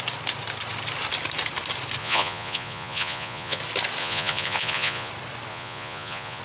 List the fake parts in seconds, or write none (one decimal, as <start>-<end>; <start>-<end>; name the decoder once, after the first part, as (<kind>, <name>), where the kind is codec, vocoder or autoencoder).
2.0-3.6 (vocoder, Vocos); 4.0-5.1; 5.5-6.4